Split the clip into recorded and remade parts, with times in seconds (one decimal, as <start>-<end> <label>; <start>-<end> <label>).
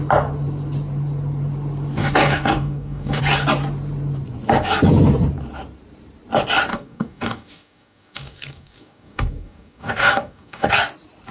0.0-2.0 recorded; 2.0-3.2 remade; 3.2-6.7 recorded; 6.7-10.7 remade; 10.7-11.3 recorded